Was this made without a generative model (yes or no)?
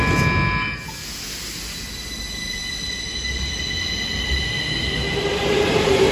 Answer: yes